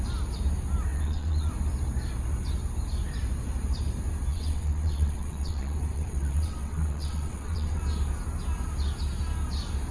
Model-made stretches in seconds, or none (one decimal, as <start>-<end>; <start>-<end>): 0.9-1.5; 4.3-7.8